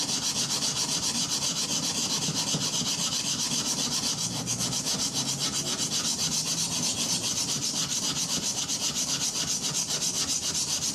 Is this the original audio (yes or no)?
yes